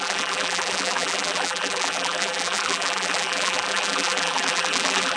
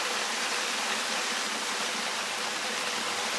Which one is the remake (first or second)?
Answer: first